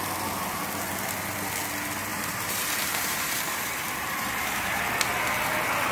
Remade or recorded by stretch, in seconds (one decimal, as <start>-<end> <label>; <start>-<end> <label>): 0.0-2.1 recorded; 2.1-4.8 remade; 4.8-5.9 recorded